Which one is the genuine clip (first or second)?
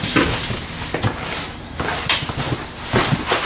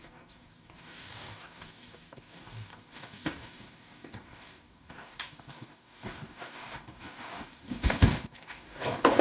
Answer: first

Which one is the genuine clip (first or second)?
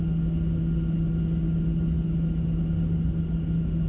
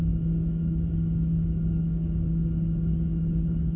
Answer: first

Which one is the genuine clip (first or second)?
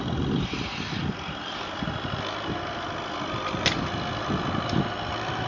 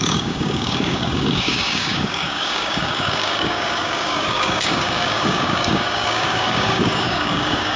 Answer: first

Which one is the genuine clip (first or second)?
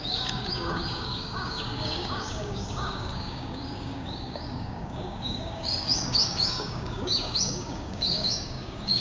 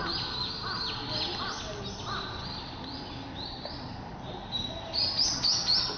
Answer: second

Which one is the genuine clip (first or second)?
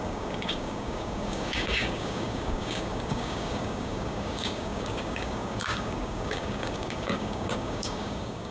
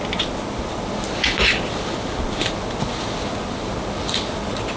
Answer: second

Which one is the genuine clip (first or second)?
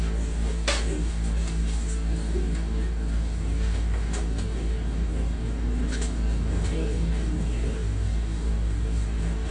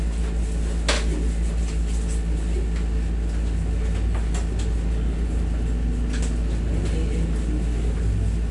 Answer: second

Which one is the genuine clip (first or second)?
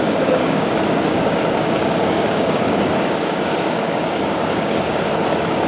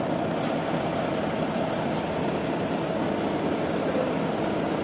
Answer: second